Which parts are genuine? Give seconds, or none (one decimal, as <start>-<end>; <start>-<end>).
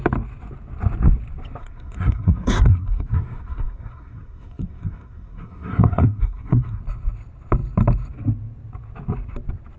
0.0-1.6; 6.8-9.8